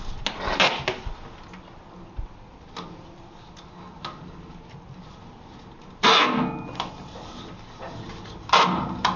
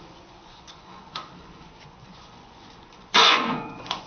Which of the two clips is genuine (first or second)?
first